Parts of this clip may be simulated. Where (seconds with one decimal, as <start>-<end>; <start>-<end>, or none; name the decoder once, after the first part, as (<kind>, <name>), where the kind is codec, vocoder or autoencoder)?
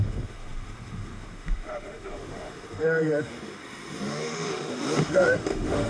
0.0-5.9 (autoencoder, DAC-VAE)